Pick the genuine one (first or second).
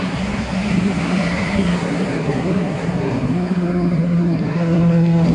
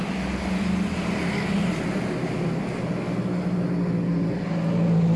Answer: second